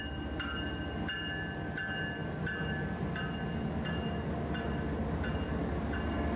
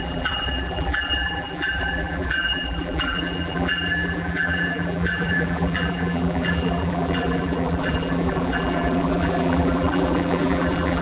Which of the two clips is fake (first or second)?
second